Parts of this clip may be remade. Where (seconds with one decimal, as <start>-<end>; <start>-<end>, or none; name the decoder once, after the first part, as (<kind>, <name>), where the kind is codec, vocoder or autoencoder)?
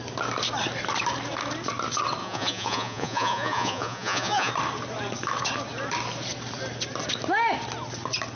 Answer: 2.2-4.5 (vocoder, Vocos)